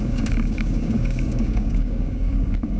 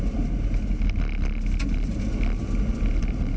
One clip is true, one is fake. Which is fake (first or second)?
first